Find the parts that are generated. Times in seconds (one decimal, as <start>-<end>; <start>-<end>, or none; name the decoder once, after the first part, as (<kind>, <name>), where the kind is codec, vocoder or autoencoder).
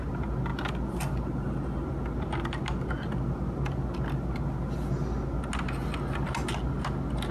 none